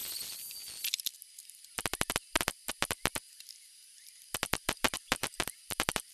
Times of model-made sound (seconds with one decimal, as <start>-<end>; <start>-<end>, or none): none